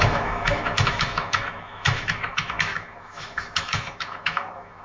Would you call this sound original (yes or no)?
no